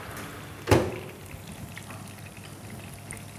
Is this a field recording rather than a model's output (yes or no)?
yes